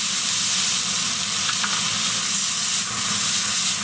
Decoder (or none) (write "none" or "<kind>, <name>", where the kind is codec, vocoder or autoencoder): none